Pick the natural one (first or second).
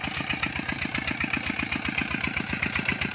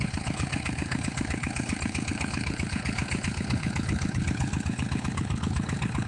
first